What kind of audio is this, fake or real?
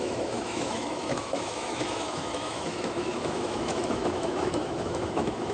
fake